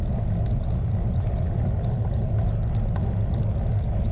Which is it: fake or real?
real